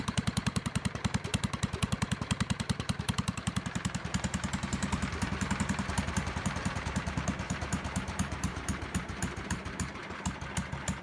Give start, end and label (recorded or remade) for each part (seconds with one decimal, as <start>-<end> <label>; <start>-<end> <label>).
0.0-10.0 remade; 10.0-11.0 recorded